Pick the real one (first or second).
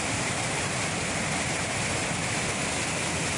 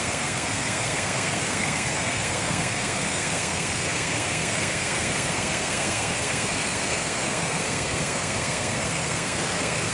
first